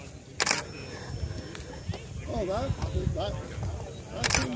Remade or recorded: recorded